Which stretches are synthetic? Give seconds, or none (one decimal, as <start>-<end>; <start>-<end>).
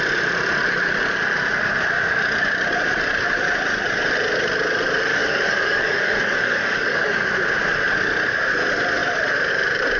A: 5.1-7.3